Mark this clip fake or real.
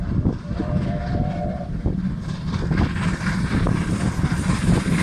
fake